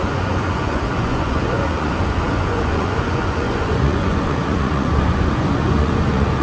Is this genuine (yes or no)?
no